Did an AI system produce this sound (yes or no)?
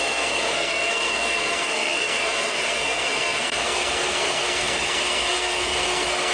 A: yes